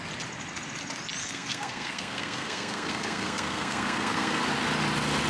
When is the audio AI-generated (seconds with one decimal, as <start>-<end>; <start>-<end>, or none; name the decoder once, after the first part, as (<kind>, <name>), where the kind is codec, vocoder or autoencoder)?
1.2-4.4 (codec, SNAC)